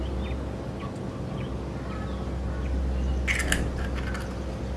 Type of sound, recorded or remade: recorded